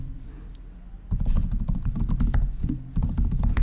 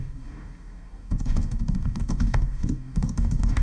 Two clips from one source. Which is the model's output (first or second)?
second